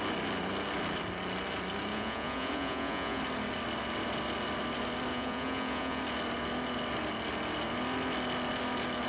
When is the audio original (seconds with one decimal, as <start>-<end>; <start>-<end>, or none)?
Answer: 0.0-1.9; 3.2-5.1; 6.0-9.1